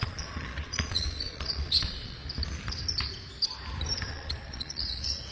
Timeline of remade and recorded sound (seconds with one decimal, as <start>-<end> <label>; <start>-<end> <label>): 0.0-2.2 remade; 2.2-4.1 recorded; 4.1-5.3 remade